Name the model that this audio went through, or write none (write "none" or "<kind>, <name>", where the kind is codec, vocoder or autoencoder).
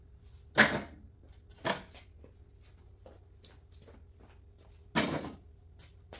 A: none